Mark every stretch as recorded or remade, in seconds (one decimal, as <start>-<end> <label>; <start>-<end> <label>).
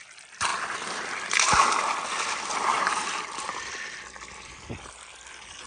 0.0-5.7 recorded